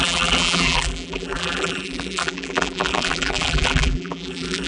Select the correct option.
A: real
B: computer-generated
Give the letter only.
B